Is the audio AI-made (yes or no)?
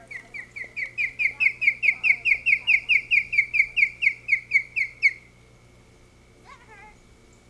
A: no